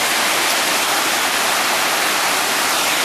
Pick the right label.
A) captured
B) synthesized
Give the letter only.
A